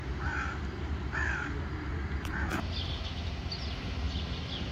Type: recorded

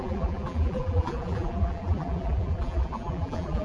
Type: remade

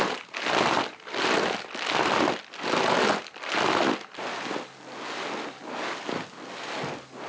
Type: recorded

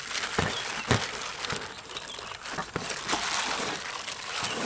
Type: recorded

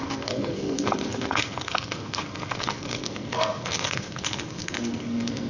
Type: remade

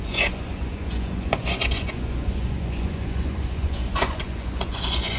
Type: remade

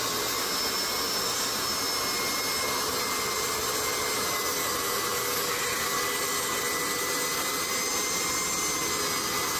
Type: recorded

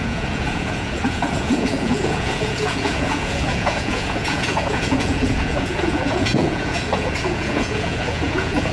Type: remade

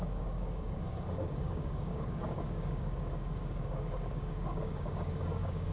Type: remade